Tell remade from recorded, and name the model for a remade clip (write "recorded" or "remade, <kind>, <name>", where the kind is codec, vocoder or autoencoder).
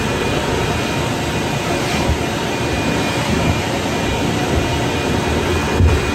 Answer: recorded